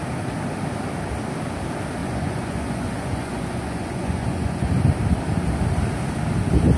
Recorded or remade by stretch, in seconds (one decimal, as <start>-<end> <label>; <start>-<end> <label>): 0.0-2.0 recorded; 2.0-4.7 remade; 4.7-6.8 recorded